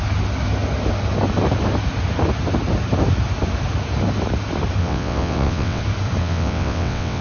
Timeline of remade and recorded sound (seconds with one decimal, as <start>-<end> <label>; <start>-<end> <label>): 0.0-4.8 recorded; 4.8-5.8 remade; 5.8-6.2 recorded; 6.2-7.2 remade